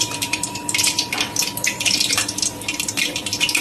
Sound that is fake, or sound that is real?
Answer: fake